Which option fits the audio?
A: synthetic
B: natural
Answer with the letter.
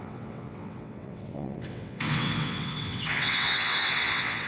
A